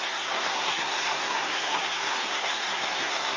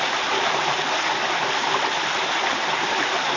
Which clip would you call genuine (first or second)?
second